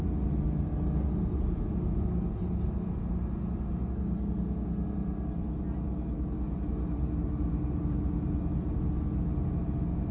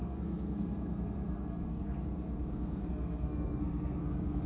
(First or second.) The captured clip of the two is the first